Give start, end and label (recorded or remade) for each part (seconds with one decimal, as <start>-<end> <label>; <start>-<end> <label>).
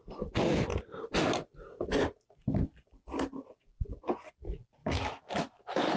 0.0-4.8 recorded; 4.8-6.0 remade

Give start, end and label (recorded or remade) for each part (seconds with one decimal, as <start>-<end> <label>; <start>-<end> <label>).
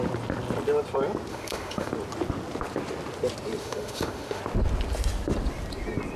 0.0-1.3 recorded; 1.3-1.9 remade; 1.9-3.6 recorded; 3.6-4.4 remade; 4.4-6.2 recorded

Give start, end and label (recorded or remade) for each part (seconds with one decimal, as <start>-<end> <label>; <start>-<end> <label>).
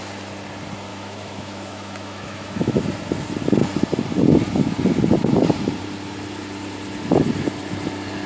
0.0-0.9 recorded; 0.9-2.8 remade; 2.8-8.3 recorded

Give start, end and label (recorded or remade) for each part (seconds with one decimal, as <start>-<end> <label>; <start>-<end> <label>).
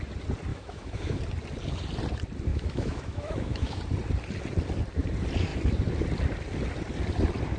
0.0-0.5 recorded; 0.5-1.2 remade; 1.2-2.5 recorded; 2.5-3.8 remade; 3.8-7.6 recorded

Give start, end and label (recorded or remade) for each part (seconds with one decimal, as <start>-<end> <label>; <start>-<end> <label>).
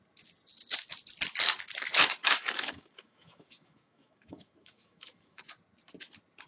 0.0-2.2 recorded; 2.2-5.4 remade; 5.4-6.5 recorded